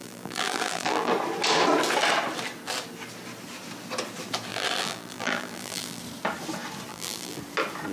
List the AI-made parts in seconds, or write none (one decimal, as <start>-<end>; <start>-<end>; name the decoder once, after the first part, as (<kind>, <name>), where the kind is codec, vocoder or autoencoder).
0.0-1.1 (vocoder, BigVGAN v2); 4.5-6.0; 6.9-7.4